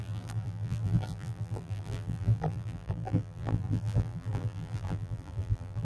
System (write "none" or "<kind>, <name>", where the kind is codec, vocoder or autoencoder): vocoder, BigVGAN v2